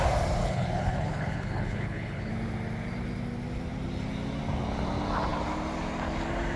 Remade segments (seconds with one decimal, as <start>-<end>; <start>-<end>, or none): 0.4-2.3